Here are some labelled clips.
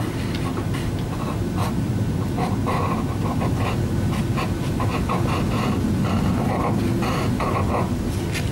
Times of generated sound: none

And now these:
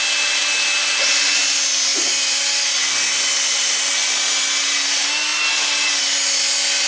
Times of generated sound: none

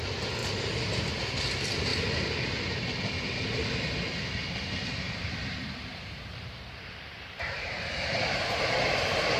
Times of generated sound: 0.4-1.1 (vocoder, BigVGAN v2); 4.4-8.6

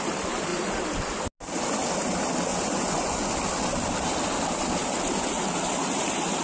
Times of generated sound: 2.5-3.3 (vocoder, Vocos)

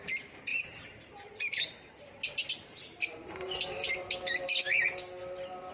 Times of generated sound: none

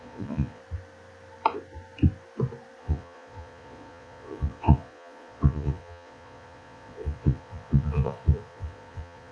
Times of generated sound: 0.0-0.6 (vocoder, Vocos); 2.8-9.3